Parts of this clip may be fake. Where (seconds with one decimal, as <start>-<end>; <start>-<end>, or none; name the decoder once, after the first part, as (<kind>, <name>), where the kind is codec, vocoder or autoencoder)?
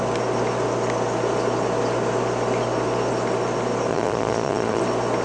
3.9-4.8 (vocoder, Vocos)